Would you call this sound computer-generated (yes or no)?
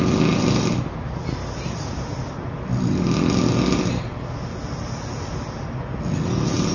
no